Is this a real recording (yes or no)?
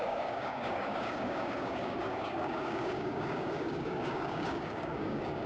no